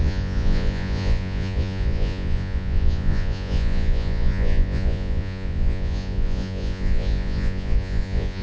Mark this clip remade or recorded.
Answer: remade